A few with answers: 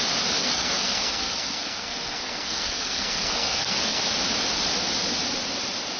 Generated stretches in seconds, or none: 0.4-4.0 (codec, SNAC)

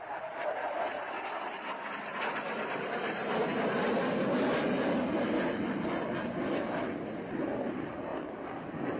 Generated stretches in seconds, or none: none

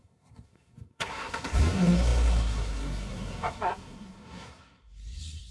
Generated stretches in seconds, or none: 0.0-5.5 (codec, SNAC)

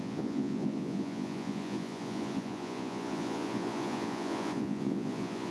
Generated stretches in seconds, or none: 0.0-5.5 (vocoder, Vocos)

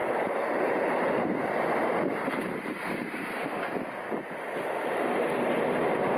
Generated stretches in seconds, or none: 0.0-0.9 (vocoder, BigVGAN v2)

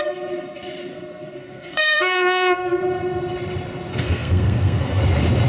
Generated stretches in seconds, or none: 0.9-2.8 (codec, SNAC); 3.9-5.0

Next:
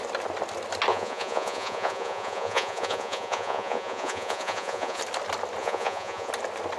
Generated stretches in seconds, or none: 0.9-5.0 (vocoder, Vocos); 5.6-6.3

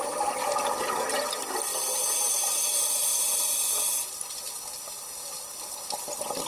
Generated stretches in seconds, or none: none